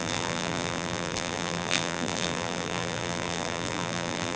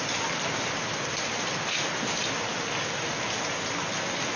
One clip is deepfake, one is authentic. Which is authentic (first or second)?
second